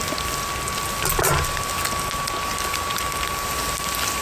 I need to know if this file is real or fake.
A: real